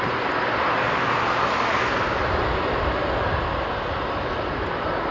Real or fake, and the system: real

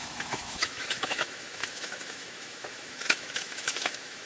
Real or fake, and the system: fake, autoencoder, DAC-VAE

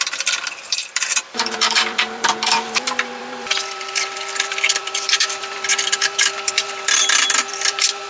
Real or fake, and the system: fake, vocoder, BigVGAN v2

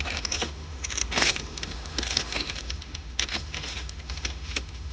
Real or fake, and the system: fake, autoencoder, DAC-VAE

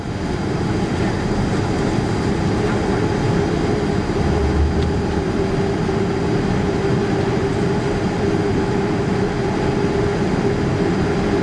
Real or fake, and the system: real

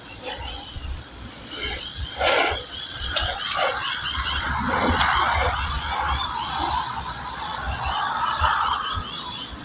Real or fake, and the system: fake, vocoder, Vocos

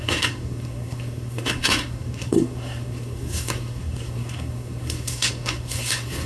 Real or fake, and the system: fake, codec, SNAC